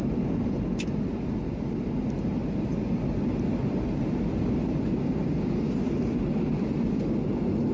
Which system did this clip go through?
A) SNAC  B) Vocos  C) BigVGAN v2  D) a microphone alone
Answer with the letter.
D